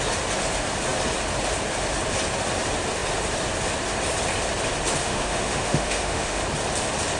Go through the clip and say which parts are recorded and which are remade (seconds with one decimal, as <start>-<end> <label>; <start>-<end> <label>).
0.0-5.0 recorded; 5.0-6.4 remade; 6.4-7.2 recorded